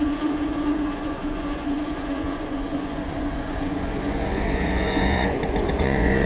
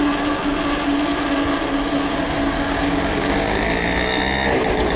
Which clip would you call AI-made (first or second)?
first